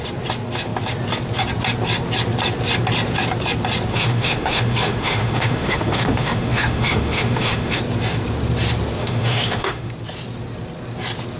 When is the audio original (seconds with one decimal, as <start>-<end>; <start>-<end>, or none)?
0.0-3.9; 7.8-9.0; 9.9-11.4